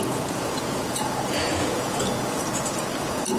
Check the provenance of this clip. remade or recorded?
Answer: remade